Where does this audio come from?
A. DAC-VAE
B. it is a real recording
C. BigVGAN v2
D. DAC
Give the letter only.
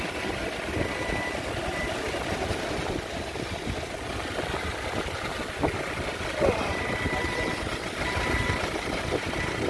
B